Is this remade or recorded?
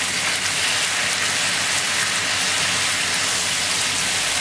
recorded